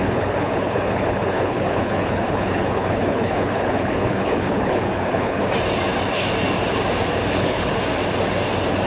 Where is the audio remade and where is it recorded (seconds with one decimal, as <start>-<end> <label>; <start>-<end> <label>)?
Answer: 0.0-5.4 remade; 5.4-7.3 recorded; 7.3-7.7 remade; 7.7-8.9 recorded